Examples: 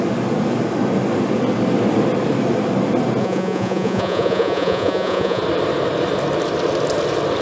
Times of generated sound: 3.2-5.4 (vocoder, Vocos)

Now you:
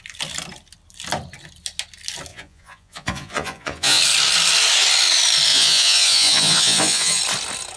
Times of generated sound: 2.3-4.0 (vocoder, Vocos); 5.5-7.2

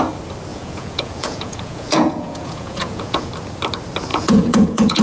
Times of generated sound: 0.5-3.3 (vocoder, Vocos); 4.1-5.0

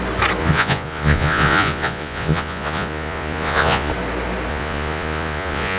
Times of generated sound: 0.4-3.9 (vocoder, Vocos); 4.5-5.8

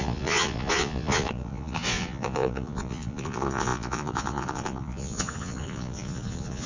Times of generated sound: 0.0-6.7 (vocoder, Vocos)